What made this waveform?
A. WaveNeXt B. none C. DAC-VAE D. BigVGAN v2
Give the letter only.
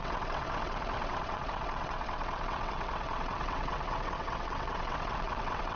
A